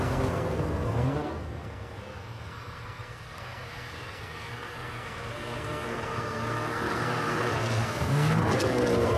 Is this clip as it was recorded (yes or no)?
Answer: no